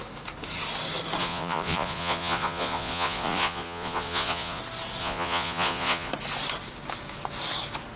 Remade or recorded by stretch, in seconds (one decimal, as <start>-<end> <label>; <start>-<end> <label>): 0.0-1.2 recorded; 1.2-4.6 remade; 4.6-5.0 recorded; 5.0-6.1 remade; 6.1-8.0 recorded